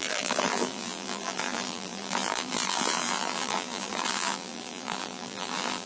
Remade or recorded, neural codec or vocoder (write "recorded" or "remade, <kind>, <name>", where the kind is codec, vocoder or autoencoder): remade, vocoder, BigVGAN v2